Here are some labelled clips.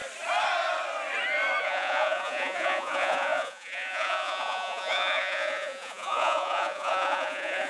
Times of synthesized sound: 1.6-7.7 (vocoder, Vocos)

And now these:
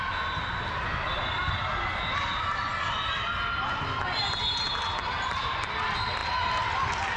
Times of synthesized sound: none

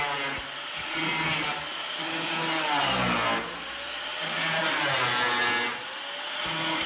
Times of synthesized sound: none